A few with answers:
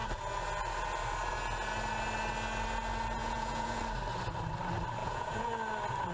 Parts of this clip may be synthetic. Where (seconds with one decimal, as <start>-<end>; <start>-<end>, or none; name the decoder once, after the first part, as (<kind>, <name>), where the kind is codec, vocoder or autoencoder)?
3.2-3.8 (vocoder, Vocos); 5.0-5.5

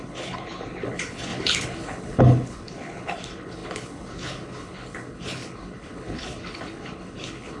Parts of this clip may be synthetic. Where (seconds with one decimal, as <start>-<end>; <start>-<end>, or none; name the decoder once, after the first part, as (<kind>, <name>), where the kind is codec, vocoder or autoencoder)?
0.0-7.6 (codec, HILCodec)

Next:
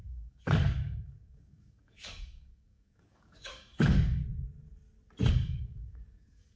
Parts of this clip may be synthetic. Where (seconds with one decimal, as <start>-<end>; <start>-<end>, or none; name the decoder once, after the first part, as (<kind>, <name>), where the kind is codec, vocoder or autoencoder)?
0.0-4.2 (codec, DAC); 5.3-6.6

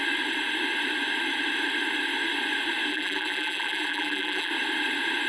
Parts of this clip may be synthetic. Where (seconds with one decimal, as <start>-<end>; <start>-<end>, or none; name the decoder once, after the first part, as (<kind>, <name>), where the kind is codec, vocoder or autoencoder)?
2.9-4.5 (vocoder, BigVGAN v2)

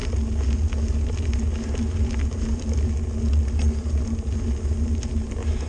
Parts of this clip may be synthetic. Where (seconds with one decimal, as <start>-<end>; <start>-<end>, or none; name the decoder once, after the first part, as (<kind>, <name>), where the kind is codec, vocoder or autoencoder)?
none

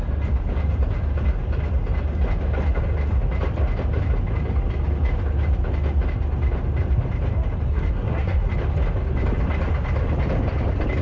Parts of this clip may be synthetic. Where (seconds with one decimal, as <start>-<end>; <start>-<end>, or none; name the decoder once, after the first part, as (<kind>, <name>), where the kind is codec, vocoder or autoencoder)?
7.7-8.5 (codec, SNAC)